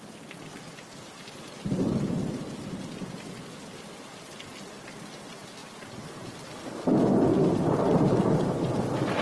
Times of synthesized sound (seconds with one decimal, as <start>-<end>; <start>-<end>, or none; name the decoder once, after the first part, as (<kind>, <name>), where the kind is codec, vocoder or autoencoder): 5.6-6.8 (vocoder, BigVGAN v2); 7.3-8.7